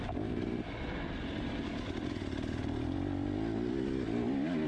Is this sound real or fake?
real